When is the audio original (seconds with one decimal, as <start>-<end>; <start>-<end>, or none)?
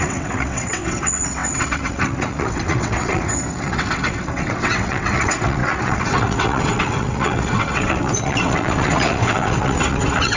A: none